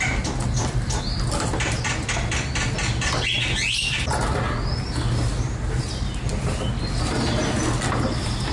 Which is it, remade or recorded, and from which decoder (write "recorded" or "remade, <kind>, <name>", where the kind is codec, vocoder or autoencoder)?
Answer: recorded